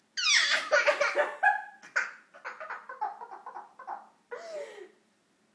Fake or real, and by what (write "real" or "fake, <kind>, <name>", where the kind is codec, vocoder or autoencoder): real